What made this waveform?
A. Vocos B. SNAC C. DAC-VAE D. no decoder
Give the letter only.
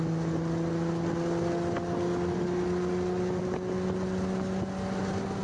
D